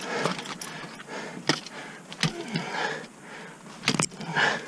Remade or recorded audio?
recorded